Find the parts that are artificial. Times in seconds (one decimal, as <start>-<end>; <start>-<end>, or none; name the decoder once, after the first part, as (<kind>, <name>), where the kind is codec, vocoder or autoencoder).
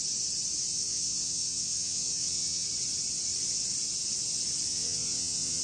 0.7-2.7 (vocoder, WaveNeXt); 4.7-5.6